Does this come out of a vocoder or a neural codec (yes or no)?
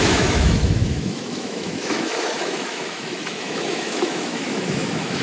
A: yes